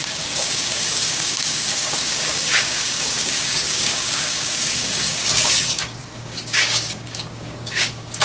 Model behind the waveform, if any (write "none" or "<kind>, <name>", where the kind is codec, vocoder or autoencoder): codec, DAC